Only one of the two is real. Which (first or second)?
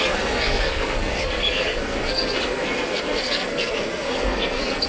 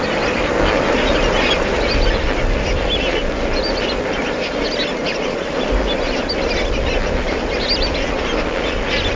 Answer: second